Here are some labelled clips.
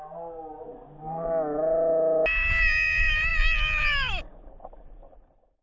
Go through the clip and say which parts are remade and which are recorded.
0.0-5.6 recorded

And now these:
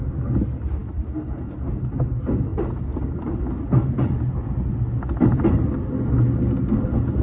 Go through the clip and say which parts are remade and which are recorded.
0.0-7.2 recorded

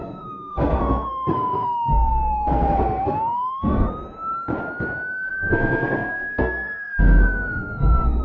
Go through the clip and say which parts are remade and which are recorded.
0.0-3.9 remade; 3.9-5.3 recorded; 5.3-8.2 remade